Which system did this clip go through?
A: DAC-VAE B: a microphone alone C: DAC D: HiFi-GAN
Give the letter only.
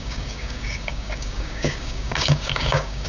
C